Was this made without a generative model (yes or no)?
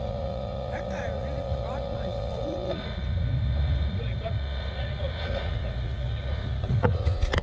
no